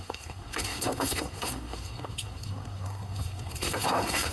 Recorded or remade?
remade